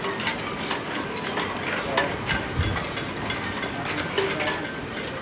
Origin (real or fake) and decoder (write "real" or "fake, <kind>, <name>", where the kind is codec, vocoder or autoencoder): real